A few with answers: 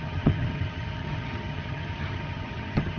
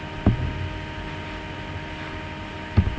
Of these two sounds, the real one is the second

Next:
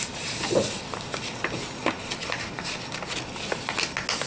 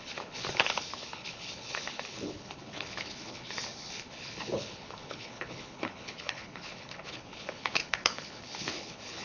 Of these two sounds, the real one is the first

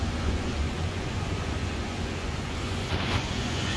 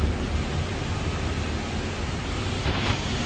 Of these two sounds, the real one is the second